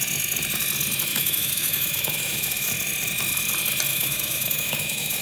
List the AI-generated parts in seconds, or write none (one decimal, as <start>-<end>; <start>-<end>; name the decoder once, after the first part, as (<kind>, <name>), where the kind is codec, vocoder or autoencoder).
1.1-2.7 (autoencoder, DAC-VAE); 3.9-5.2